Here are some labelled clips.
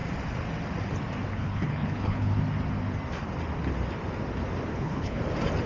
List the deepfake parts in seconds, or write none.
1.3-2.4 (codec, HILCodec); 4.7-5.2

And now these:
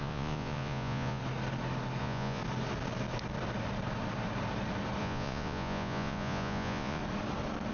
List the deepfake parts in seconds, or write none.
0.0-1.2 (vocoder, Vocos); 2.0-2.4; 5.0-7.0

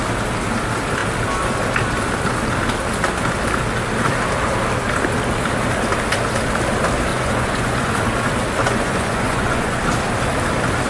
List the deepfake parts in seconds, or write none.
7.1-7.9 (vocoder, Vocos); 8.6-9.8

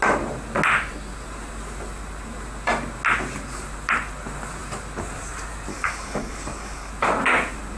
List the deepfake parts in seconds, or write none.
5.7-6.9 (codec, DAC)

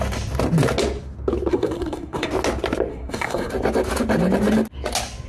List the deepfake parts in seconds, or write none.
1.5-2.3 (codec, SNAC); 2.9-3.5

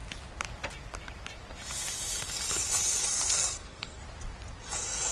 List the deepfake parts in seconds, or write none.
3.1-4.0 (codec, SNAC)

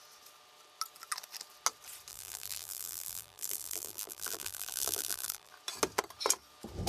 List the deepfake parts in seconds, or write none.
2.1-5.5 (vocoder, BigVGAN v2)

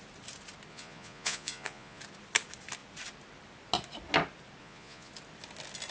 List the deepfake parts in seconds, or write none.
0.7-2.0 (vocoder, Vocos); 4.6-5.1